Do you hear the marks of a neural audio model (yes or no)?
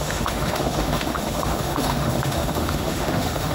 yes